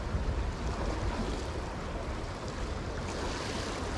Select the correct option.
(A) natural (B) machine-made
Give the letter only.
A